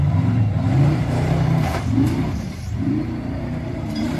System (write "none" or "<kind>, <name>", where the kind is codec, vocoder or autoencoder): vocoder, BigVGAN v2